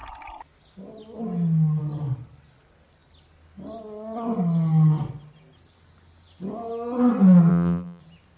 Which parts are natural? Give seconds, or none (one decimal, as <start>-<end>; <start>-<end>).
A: 0.0-7.5; 8.0-8.4